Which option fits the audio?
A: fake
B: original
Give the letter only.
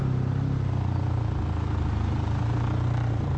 B